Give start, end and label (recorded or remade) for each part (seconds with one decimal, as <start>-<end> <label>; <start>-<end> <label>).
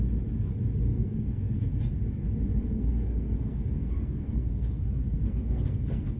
0.0-0.9 recorded; 0.9-1.7 remade; 1.7-2.5 recorded; 2.5-6.2 remade